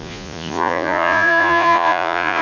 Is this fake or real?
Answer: fake